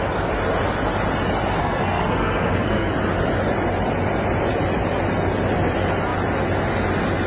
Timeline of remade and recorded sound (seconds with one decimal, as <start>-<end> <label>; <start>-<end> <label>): 0.0-1.6 recorded; 1.6-2.9 remade; 2.9-7.3 recorded